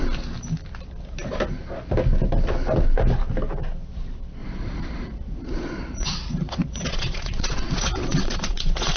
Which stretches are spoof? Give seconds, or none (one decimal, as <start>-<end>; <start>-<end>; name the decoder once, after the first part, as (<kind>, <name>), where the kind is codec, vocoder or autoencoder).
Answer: 4.4-9.0 (vocoder, Vocos)